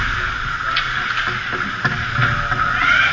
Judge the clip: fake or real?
real